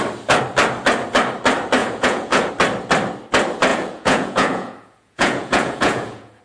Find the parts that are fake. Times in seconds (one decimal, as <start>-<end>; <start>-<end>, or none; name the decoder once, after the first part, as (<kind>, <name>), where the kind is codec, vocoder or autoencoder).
1.8-2.5 (vocoder, Vocos); 3.7-6.4